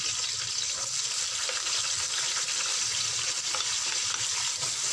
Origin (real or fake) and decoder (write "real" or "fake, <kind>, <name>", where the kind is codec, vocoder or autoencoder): real